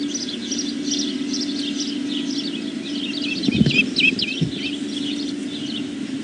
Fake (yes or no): no